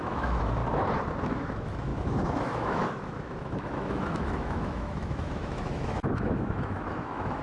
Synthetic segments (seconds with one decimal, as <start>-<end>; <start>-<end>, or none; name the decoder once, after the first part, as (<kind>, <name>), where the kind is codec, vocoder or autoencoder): 0.0-0.6 (autoencoder, DAC-VAE); 1.2-7.4